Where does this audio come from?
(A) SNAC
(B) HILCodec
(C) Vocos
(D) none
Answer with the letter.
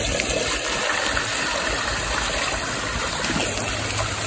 D